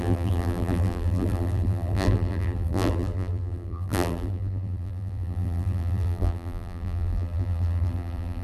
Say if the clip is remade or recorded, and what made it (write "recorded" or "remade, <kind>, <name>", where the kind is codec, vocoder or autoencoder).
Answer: remade, vocoder, BigVGAN v2